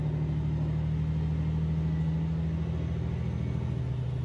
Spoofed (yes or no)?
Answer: no